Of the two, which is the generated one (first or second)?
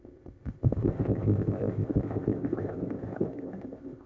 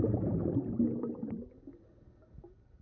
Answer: first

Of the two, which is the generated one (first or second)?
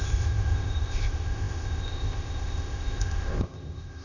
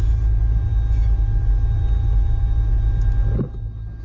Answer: first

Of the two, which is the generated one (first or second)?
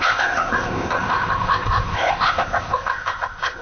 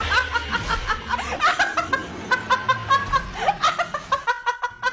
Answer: first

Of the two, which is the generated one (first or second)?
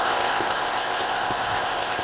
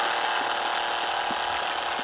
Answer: first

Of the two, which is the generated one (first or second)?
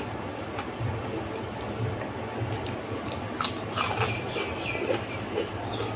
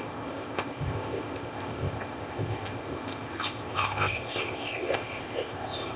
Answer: second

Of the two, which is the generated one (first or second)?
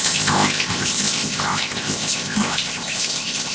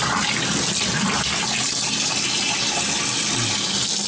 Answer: first